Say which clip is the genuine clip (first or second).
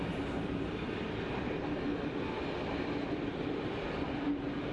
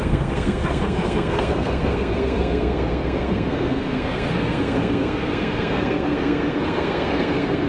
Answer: first